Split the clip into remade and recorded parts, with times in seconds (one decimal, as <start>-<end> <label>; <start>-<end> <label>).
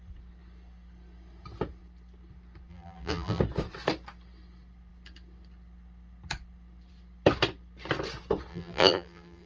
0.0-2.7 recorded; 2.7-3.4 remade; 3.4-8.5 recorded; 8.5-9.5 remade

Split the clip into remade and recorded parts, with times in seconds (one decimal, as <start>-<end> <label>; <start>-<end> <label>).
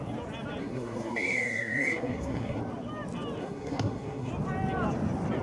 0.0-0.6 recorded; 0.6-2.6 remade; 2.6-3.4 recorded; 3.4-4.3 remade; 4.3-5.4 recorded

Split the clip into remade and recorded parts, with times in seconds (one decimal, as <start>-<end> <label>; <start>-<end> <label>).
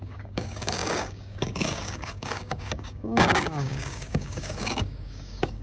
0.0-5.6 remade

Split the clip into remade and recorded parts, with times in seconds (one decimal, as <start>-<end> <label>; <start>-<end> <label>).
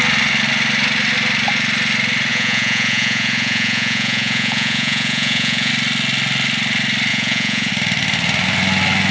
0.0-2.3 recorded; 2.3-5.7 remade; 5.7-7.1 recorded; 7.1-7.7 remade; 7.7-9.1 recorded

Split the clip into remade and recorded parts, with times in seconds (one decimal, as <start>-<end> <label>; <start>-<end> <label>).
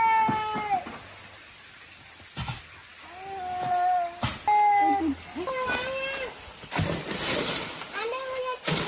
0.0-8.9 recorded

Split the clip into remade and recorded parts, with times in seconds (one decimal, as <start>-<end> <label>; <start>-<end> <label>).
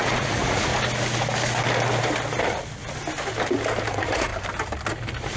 0.0-0.7 remade; 0.7-3.9 recorded; 3.9-4.3 remade; 4.3-5.4 recorded